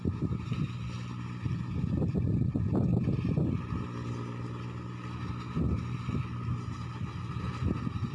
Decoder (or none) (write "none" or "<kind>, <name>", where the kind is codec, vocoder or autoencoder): none